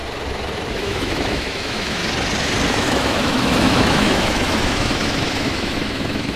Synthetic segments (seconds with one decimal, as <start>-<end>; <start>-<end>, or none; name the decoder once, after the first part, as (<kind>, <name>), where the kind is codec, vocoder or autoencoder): 0.7-2.0 (autoencoder, DAC-VAE); 2.7-6.4